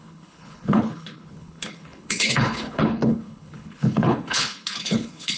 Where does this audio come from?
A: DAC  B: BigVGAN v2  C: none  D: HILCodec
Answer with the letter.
D